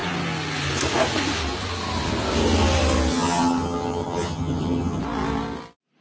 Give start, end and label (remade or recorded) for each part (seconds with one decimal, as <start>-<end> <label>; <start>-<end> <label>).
0.0-3.1 recorded; 3.1-5.0 remade; 5.0-6.0 recorded